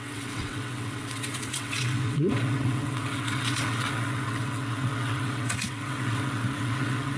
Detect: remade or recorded remade